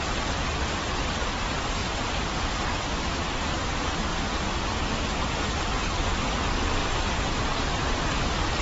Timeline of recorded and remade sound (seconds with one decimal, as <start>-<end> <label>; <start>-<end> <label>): 0.0-1.8 recorded; 1.8-2.4 remade; 2.4-6.8 recorded; 6.8-7.7 remade; 7.7-8.6 recorded